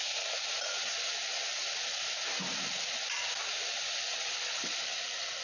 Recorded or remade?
recorded